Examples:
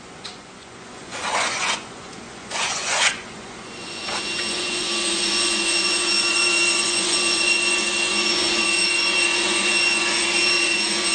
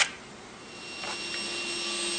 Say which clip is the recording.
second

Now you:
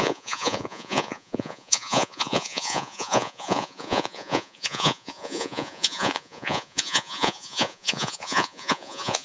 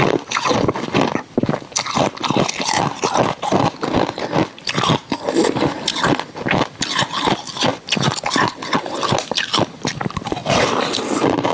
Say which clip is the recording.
second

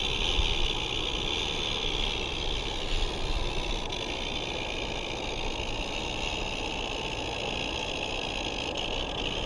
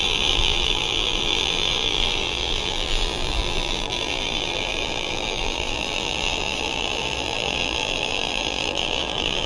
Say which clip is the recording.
first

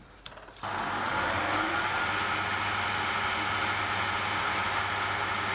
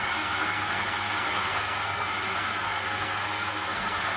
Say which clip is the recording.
first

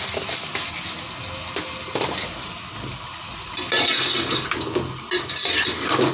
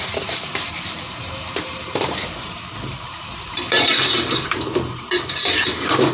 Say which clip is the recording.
first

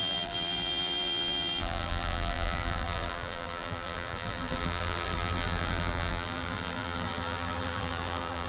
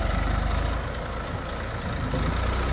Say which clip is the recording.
second